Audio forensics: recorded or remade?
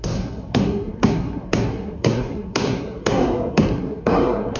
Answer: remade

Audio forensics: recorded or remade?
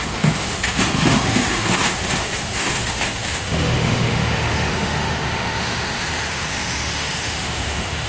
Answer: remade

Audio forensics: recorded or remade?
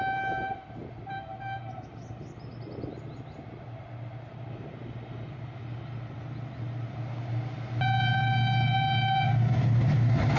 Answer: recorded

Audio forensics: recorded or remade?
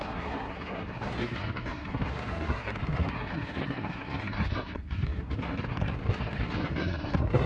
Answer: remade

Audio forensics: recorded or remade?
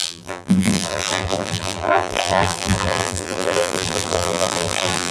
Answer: remade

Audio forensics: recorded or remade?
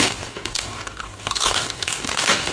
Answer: remade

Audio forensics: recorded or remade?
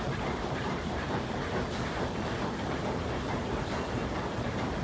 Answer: remade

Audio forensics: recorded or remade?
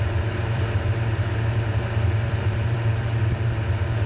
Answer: remade